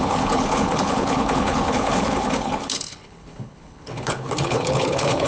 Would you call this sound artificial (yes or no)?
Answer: yes